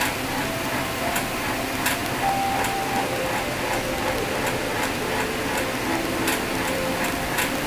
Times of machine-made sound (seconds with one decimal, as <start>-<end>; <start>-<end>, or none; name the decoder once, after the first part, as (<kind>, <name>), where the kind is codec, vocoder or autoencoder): none